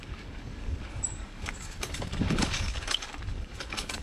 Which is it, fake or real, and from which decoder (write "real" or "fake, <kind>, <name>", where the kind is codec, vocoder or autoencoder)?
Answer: fake, codec, DAC